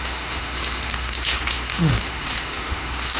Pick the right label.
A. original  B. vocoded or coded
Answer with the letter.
B